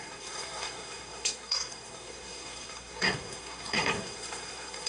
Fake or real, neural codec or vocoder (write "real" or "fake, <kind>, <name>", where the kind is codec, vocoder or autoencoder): fake, codec, SNAC